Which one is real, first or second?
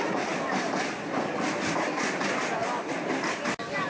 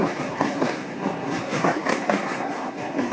first